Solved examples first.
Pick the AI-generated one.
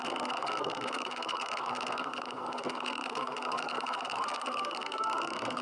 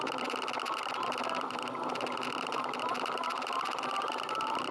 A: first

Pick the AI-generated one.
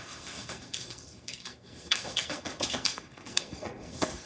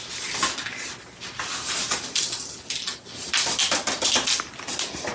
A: first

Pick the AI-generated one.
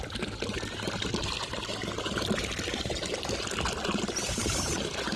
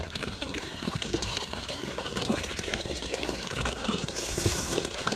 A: second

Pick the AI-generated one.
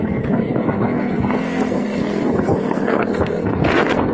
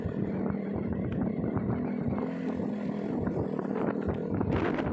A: first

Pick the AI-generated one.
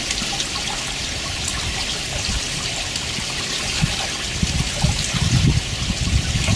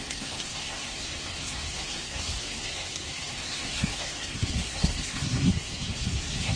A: second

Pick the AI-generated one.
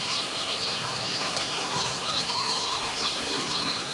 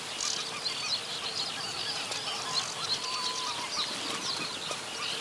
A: first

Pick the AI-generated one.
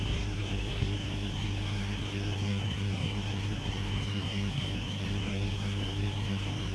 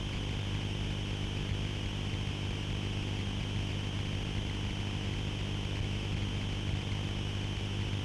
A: first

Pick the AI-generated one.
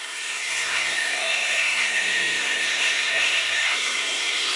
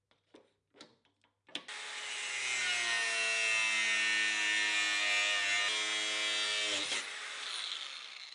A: first